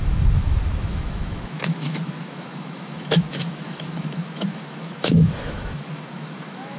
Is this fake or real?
fake